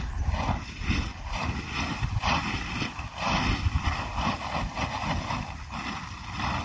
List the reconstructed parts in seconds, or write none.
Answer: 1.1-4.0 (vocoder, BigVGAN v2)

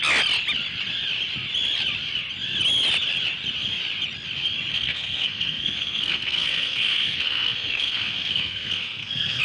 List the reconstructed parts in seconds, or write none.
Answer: 4.7-9.4 (codec, SNAC)

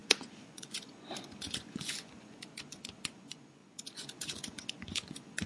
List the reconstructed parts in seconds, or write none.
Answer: 0.0-5.5 (vocoder, Vocos)

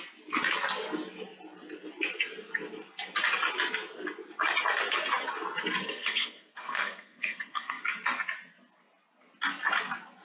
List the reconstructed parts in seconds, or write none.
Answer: 5.8-7.8 (codec, SNAC)